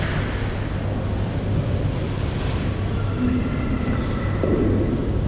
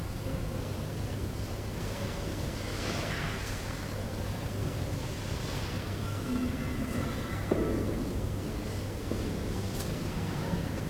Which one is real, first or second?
first